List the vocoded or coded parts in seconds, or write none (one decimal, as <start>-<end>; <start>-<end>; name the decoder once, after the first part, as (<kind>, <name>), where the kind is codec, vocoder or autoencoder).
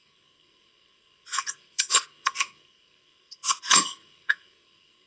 0.0-5.1 (codec, SNAC)